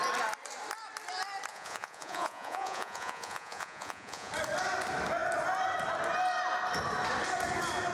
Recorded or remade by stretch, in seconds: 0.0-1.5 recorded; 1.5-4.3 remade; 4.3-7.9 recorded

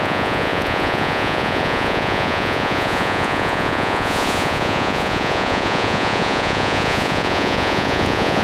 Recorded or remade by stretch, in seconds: 0.0-8.4 remade

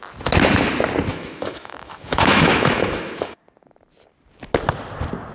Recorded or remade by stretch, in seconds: 0.0-1.1 recorded; 1.1-3.4 remade; 3.4-5.3 recorded

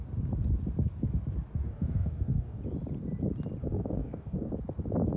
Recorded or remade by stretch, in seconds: 0.0-1.7 recorded; 1.7-2.6 remade; 2.6-3.6 recorded; 3.6-4.5 remade; 4.5-5.2 recorded

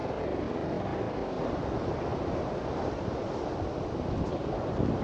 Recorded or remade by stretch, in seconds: 0.0-5.0 recorded